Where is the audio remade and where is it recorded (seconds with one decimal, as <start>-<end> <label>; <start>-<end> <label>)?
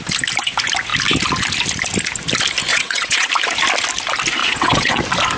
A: 0.0-2.7 recorded; 2.7-3.3 remade; 3.3-4.4 recorded; 4.4-5.0 remade; 5.0-5.4 recorded